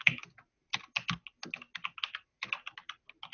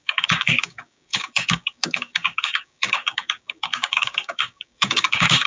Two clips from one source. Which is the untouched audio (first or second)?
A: first